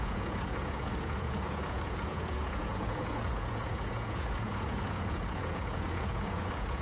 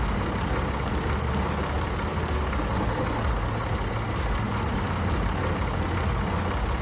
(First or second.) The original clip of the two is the second